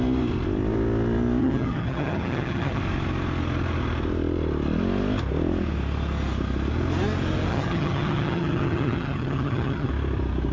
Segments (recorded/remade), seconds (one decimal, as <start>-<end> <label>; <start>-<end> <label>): 0.0-1.4 recorded; 1.4-2.8 remade; 2.8-7.5 recorded; 7.5-9.9 remade; 9.9-10.5 recorded